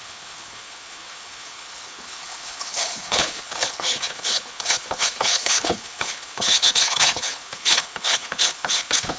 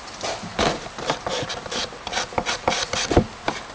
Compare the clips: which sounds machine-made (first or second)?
first